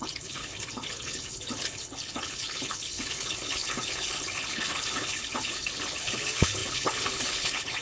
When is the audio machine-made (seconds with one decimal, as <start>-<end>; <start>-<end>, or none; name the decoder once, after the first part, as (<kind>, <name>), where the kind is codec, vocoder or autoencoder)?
0.0-7.8 (codec, HILCodec)